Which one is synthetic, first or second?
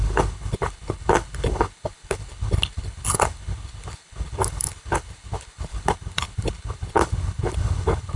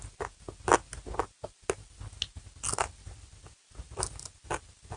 first